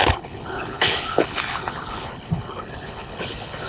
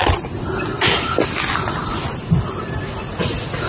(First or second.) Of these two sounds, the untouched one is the second